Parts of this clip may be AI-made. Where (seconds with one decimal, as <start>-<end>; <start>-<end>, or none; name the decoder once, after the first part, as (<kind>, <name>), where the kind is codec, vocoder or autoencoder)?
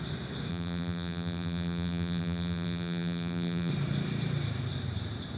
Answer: 0.5-3.7 (vocoder, BigVGAN v2)